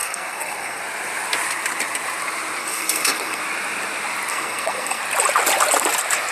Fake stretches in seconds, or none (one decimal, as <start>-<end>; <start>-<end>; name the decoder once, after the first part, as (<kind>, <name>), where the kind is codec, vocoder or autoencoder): 0.0-0.8 (codec, SNAC); 2.6-3.4; 4.3-5.0